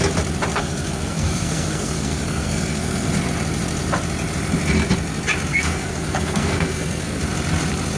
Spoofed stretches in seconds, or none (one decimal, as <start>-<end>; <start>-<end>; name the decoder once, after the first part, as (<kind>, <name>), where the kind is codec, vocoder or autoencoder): 0.5-3.1 (codec, SNAC); 5.5-7.2

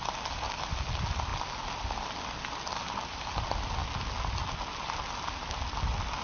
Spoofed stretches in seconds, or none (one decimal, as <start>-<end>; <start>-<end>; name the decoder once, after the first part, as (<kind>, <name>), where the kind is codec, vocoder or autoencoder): none

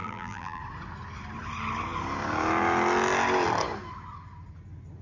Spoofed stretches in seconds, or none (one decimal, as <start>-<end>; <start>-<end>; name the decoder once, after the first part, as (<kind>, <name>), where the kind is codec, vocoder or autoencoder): 0.0-0.6 (vocoder, BigVGAN v2)

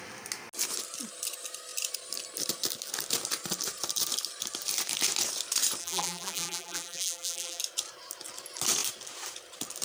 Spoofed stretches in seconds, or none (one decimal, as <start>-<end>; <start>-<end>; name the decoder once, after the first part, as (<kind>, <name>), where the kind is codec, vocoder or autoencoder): 5.8-7.6 (vocoder, BigVGAN v2)

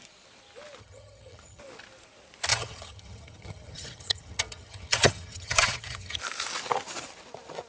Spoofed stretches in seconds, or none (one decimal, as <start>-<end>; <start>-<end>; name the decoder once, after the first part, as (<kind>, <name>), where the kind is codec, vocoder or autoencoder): 0.8-1.6 (vocoder, HiFi-GAN); 2.5-6.2

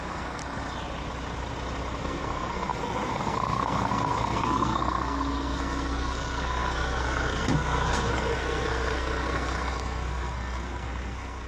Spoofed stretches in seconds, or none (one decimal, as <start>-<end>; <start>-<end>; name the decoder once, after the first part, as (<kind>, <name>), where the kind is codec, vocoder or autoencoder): 0.0-0.4 (codec, SNAC); 2.0-11.5

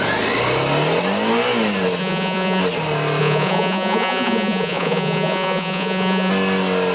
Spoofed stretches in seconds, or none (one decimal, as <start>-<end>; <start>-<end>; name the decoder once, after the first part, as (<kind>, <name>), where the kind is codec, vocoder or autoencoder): 2.0-2.6 (vocoder, Vocos); 3.2-6.3

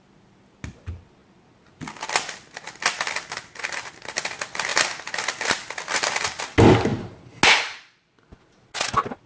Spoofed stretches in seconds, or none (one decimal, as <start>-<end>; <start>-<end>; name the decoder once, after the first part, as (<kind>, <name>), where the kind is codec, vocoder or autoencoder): none